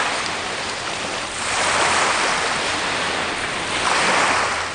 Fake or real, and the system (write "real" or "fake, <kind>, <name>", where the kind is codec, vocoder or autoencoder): real